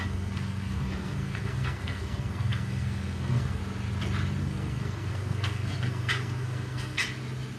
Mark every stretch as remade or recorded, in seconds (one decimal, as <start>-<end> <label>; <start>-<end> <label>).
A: 0.0-3.6 remade; 3.6-4.4 recorded; 4.4-7.0 remade; 7.0-7.6 recorded